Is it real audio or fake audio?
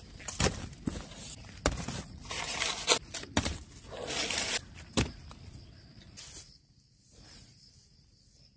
real